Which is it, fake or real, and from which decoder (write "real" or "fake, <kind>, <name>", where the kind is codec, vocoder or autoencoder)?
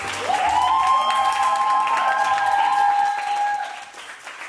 real